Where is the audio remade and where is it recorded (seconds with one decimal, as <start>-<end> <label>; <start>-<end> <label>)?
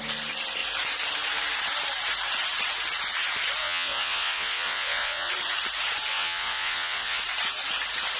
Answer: 0.0-3.6 recorded; 3.6-5.3 remade; 5.3-6.1 recorded; 6.1-7.2 remade; 7.2-8.2 recorded